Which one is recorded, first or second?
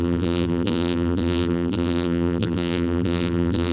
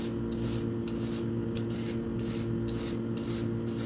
second